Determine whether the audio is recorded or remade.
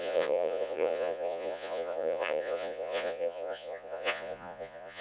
remade